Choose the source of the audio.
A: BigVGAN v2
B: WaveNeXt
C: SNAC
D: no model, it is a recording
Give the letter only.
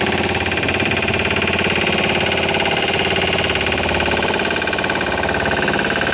D